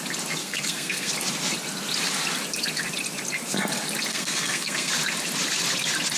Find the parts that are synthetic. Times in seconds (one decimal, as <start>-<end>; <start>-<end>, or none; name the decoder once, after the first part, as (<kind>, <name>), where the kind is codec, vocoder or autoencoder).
0.4-1.1 (codec, SNAC); 4.1-4.9